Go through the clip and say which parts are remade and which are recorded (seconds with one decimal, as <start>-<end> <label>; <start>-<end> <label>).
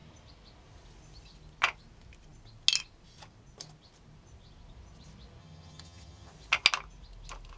0.0-5.4 recorded; 5.4-6.3 remade; 6.3-7.6 recorded